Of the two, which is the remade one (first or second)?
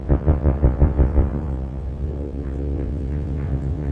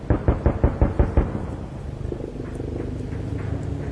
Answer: first